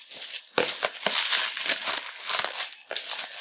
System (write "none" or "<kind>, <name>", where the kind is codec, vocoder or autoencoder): none